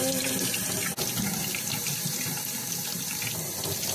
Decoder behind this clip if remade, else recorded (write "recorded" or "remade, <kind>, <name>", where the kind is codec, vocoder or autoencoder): recorded